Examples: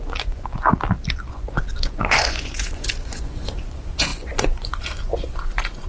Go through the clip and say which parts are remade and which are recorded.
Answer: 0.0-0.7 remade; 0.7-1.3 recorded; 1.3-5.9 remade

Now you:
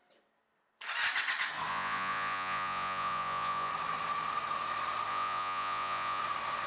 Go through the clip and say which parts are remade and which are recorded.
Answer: 0.0-1.7 recorded; 1.7-3.7 remade; 3.7-5.1 recorded; 5.1-6.2 remade; 6.2-6.7 recorded